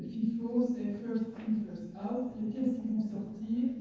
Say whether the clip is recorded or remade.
remade